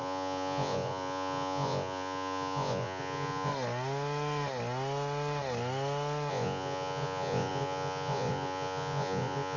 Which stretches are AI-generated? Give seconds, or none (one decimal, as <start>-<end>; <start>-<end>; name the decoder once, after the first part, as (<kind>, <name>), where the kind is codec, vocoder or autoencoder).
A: 0.0-3.5 (vocoder, Vocos); 6.3-9.6